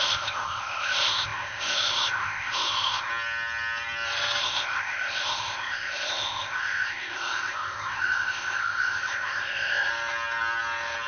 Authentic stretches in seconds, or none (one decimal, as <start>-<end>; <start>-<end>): 3.1-4.4; 9.9-11.1